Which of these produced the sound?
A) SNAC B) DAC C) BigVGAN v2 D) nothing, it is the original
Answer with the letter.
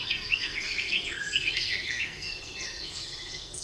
A